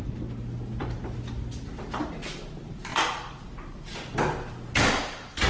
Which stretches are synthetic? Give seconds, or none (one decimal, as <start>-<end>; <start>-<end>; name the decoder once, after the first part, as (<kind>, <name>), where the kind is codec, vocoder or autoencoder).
0.8-2.0 (vocoder, BigVGAN v2); 2.9-3.4; 3.9-4.4